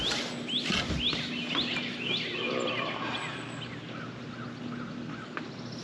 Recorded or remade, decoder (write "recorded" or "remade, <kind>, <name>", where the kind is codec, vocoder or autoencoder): recorded